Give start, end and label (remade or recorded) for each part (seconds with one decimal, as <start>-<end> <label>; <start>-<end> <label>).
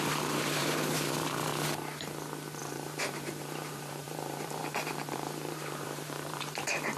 0.0-1.5 remade; 1.5-2.6 recorded; 2.6-7.0 remade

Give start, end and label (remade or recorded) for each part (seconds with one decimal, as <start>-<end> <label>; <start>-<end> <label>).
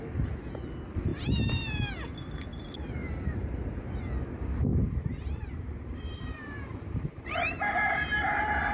0.0-2.5 recorded; 2.5-4.0 remade; 4.0-4.7 recorded; 4.7-7.7 remade; 7.7-8.7 recorded